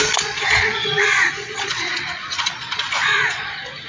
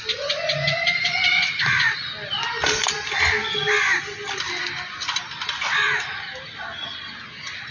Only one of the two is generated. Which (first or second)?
first